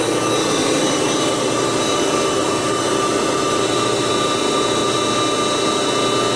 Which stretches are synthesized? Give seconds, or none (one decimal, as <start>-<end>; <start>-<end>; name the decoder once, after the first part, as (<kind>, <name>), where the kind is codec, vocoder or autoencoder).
0.6-4.1 (vocoder, BigVGAN v2)